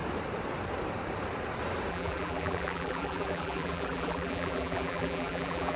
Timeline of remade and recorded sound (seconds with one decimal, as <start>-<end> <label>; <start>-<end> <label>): 0.0-1.9 recorded; 1.9-5.8 remade